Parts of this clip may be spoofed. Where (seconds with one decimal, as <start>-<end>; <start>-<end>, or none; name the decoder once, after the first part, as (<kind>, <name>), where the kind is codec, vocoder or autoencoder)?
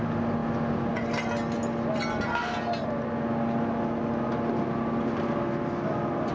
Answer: none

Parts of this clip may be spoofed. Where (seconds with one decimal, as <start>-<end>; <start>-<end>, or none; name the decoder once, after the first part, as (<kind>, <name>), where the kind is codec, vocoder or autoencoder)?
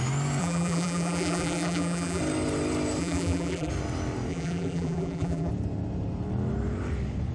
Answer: 0.4-2.2 (vocoder, BigVGAN v2); 3.0-3.7; 4.3-5.5